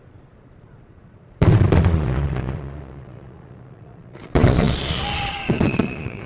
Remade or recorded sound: remade